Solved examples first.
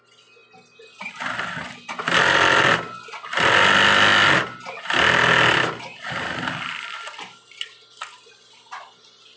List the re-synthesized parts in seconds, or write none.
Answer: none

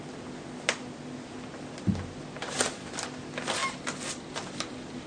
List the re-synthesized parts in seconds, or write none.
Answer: none